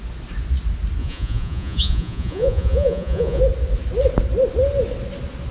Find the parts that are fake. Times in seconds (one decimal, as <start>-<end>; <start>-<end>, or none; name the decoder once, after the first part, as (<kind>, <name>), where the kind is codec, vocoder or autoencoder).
1.0-3.4 (vocoder, Vocos)